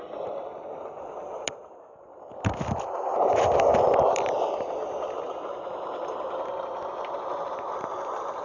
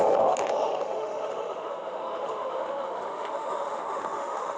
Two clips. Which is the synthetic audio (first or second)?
second